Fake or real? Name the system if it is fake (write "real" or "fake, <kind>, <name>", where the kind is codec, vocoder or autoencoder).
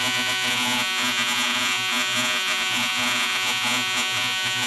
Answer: fake, vocoder, Vocos